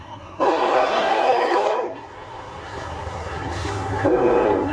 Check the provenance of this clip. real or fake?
fake